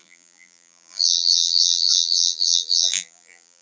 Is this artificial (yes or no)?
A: yes